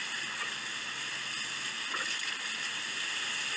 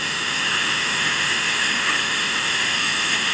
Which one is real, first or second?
first